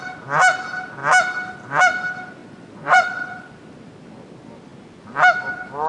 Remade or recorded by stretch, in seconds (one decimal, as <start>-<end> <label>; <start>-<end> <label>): 0.0-2.4 recorded; 2.4-3.5 remade; 3.5-5.9 recorded

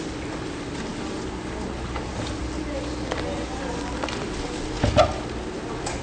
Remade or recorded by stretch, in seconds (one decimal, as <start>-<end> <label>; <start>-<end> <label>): 0.0-6.0 recorded

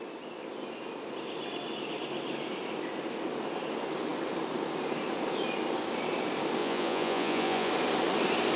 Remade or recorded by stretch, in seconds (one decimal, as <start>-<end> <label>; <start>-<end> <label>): 0.0-6.6 recorded; 6.6-7.7 remade; 7.7-8.6 recorded